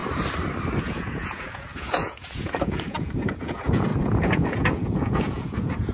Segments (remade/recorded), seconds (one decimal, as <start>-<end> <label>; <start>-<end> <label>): 0.0-0.8 recorded; 0.8-5.9 remade